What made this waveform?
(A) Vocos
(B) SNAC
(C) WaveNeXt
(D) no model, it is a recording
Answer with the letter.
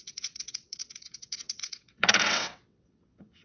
C